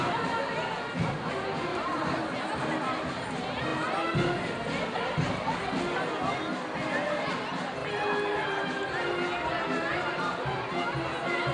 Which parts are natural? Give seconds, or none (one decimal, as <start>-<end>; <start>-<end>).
0.0-1.7; 2.4-11.5